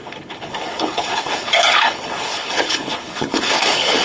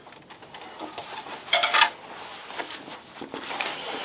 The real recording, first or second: second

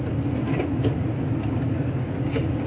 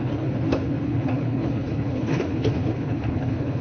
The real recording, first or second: first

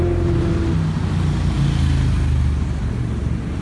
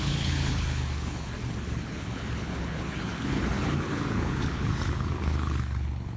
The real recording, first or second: first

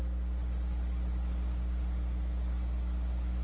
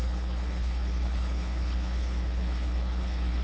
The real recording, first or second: first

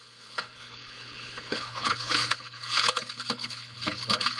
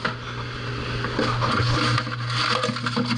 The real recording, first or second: second